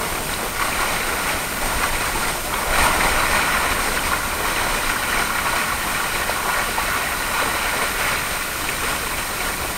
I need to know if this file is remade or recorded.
recorded